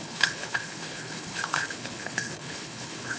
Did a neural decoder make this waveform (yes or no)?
yes